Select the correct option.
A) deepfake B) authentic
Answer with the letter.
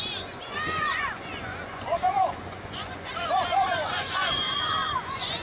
A